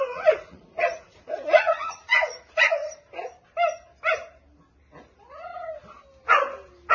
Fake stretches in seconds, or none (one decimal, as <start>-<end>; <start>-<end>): 0.0-2.8